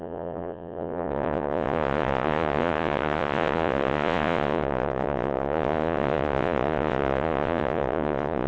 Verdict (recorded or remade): remade